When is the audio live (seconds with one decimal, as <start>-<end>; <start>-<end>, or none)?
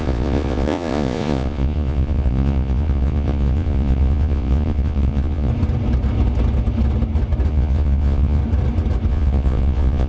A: 5.5-7.5; 8.4-9.1